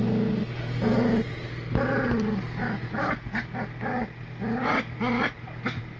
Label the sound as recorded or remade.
recorded